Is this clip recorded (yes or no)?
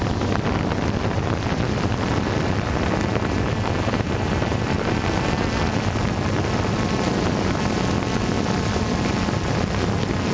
yes